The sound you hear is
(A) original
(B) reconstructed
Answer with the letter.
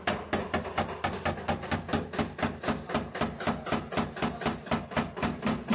A